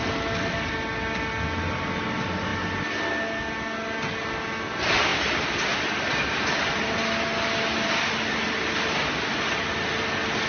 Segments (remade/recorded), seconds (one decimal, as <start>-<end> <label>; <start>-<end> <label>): 0.0-10.5 recorded